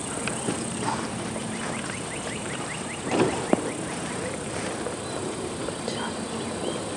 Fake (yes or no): yes